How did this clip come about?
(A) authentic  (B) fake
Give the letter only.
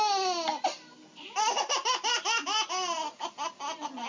A